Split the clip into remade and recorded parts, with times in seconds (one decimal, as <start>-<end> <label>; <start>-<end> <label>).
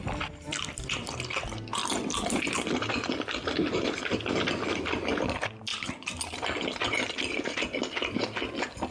0.0-0.6 remade; 0.6-1.8 recorded; 1.8-2.9 remade; 2.9-8.9 recorded